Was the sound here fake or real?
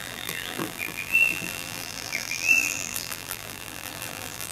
fake